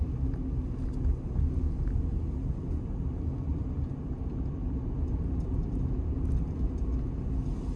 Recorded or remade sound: recorded